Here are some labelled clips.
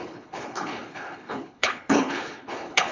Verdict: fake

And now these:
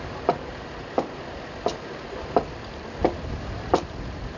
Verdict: real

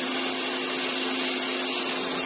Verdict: real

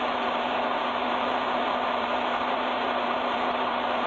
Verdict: fake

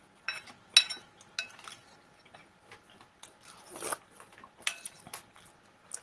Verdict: real